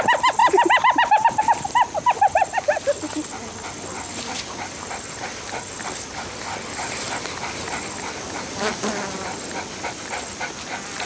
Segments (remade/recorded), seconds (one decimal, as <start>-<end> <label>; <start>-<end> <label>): 0.0-0.4 recorded; 0.4-1.4 remade; 1.4-11.1 recorded